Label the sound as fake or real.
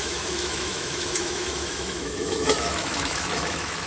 fake